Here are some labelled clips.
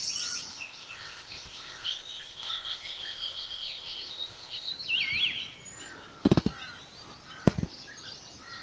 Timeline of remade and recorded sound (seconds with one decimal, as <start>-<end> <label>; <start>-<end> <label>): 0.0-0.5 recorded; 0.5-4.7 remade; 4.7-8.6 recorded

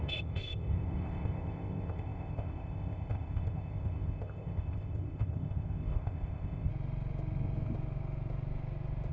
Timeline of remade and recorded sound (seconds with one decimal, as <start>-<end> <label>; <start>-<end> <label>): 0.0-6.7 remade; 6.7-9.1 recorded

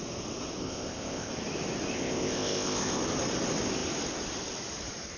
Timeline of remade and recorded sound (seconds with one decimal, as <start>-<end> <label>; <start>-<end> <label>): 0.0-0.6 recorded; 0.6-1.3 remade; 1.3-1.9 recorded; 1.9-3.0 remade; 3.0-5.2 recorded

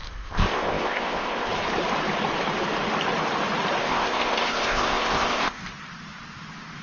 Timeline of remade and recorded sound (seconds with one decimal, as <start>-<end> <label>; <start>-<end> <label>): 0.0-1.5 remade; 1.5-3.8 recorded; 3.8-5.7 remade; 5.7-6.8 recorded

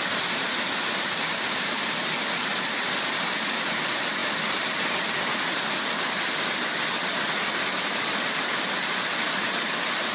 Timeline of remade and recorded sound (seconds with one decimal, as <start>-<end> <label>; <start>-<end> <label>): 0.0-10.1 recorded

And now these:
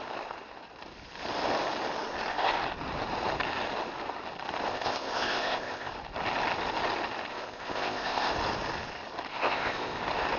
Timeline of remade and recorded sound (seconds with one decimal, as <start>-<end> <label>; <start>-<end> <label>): 0.0-4.7 recorded; 4.7-5.9 remade; 5.9-7.3 recorded; 7.3-8.3 remade; 8.3-9.3 recorded; 9.3-10.0 remade; 10.0-10.4 recorded

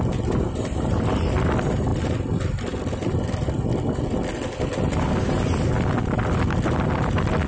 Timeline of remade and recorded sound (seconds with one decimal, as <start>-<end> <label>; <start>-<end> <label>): 0.0-7.5 recorded

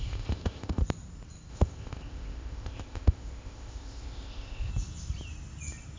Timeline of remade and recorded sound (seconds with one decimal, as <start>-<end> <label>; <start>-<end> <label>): 0.0-0.8 remade; 0.8-1.5 recorded; 1.5-4.7 remade; 4.7-6.0 recorded